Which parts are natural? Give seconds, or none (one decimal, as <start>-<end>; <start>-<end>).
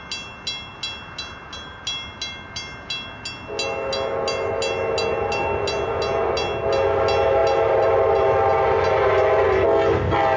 0.0-10.4